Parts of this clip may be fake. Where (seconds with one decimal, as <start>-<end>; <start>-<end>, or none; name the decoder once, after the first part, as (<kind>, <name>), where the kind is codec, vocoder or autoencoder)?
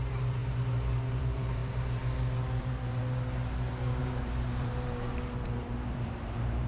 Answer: 0.0-0.4 (vocoder, BigVGAN v2); 1.2-1.6; 2.6-3.0; 4.0-6.7